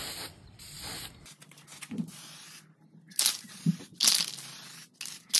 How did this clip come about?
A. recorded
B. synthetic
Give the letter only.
A